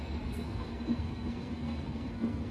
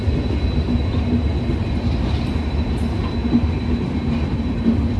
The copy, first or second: first